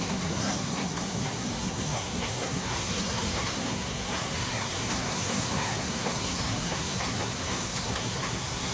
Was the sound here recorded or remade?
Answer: remade